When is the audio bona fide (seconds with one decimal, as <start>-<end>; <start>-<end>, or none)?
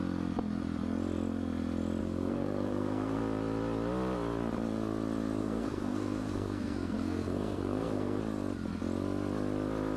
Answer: 0.0-2.0; 3.2-5.4; 8.2-10.0